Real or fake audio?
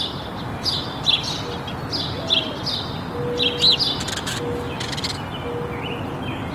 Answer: real